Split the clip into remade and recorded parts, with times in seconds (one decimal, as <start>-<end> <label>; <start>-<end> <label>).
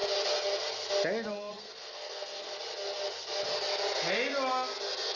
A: 0.0-1.5 recorded; 1.5-2.5 remade; 2.5-5.2 recorded